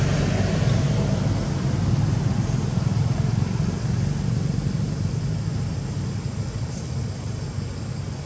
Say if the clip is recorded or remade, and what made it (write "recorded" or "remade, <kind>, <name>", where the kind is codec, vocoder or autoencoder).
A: recorded